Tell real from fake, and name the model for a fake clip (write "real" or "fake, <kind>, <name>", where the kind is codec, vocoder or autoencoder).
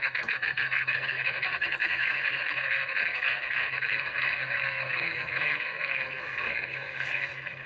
fake, codec, SNAC